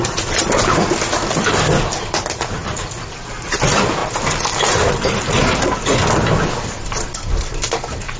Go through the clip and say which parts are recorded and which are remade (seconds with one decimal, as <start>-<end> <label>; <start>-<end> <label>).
0.0-2.6 remade; 2.6-3.4 recorded; 3.4-4.0 remade; 4.0-4.9 recorded; 4.9-5.4 remade; 5.4-7.4 recorded; 7.4-8.2 remade